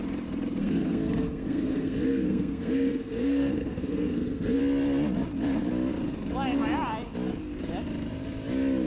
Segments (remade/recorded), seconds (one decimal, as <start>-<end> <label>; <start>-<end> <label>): 0.0-0.6 recorded; 0.6-4.6 remade; 4.6-8.9 recorded